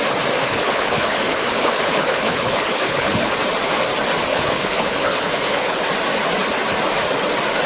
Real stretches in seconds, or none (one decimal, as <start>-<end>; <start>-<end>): 0.0-0.4; 3.3-4.3; 5.8-7.7